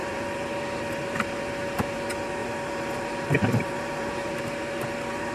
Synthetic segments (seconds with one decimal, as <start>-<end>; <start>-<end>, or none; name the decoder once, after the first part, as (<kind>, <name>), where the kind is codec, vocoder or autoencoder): 0.0-2.0 (vocoder, BigVGAN v2); 2.4-4.4